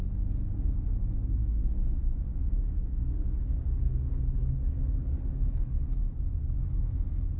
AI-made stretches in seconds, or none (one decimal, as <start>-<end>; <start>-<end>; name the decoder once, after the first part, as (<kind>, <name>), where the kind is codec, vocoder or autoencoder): 1.4-2.0 (codec, DAC); 2.4-5.8